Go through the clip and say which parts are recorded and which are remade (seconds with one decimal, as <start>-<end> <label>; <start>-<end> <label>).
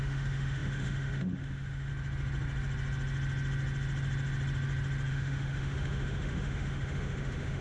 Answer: 0.0-1.9 remade; 1.9-5.1 recorded; 5.1-7.6 remade